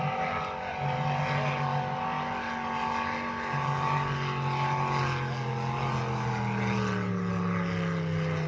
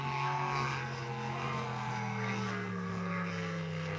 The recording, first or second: first